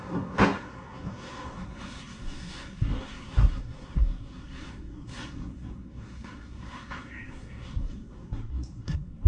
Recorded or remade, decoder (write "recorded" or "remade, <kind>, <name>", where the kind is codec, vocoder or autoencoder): remade, codec, SNAC